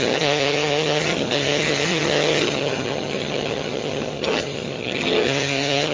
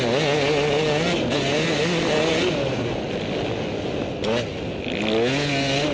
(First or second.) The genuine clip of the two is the second